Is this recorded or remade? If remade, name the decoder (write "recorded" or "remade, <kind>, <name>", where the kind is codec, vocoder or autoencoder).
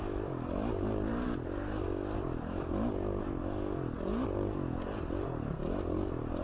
recorded